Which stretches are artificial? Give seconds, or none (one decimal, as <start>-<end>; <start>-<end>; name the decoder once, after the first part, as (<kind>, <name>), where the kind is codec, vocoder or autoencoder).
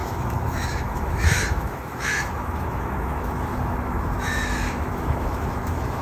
0.0-6.0 (autoencoder, DAC-VAE)